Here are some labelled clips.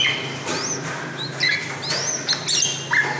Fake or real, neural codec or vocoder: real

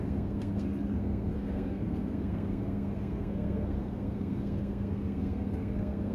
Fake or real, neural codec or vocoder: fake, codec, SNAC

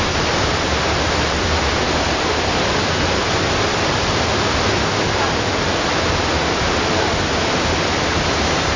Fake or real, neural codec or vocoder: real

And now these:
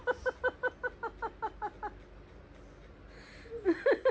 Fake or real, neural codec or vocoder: real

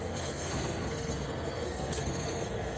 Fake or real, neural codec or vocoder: fake, codec, SNAC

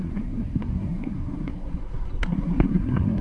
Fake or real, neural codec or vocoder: fake, codec, SNAC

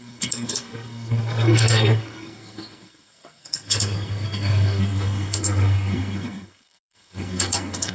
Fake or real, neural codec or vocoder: fake, codec, SNAC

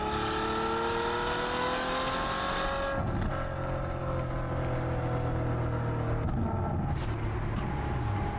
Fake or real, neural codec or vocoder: real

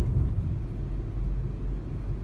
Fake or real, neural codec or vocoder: real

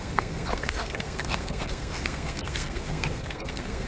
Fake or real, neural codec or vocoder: fake, codec, SNAC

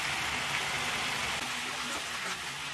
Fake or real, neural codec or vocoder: real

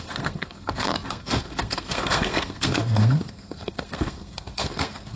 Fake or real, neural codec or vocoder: fake, codec, SNAC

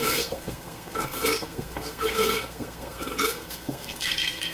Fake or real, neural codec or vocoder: fake, codec, SNAC